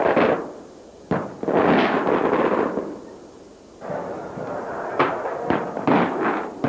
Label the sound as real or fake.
real